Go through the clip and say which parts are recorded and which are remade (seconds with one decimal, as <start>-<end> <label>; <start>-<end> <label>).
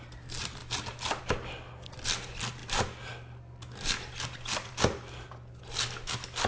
0.0-6.5 recorded